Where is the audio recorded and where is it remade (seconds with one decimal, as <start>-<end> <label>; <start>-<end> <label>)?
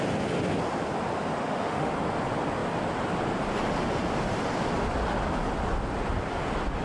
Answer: 0.0-1.4 recorded; 1.4-1.9 remade; 1.9-6.8 recorded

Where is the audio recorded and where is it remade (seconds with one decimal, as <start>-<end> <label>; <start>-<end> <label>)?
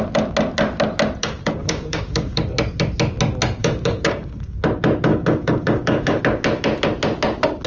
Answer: 0.0-1.2 recorded; 1.2-2.4 remade; 2.4-3.6 recorded; 3.6-4.6 remade; 4.6-5.1 recorded; 5.1-6.2 remade; 6.2-7.7 recorded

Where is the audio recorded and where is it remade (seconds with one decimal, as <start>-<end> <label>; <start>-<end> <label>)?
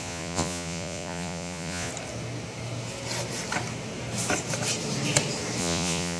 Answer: 0.0-1.9 remade; 1.9-5.6 recorded; 5.6-6.2 remade